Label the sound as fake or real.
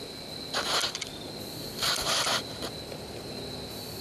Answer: real